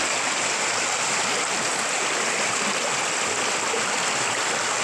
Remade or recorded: recorded